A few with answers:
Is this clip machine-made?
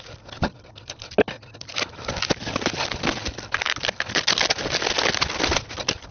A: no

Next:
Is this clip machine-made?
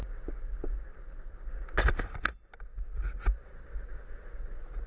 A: no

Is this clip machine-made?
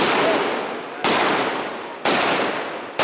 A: no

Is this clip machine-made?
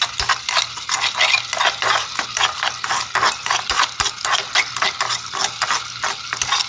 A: no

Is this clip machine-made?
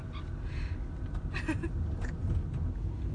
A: no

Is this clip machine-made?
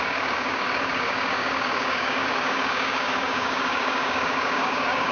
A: yes